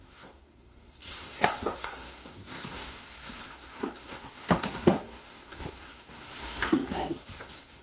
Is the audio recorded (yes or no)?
no